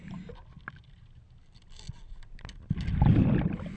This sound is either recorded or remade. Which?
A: recorded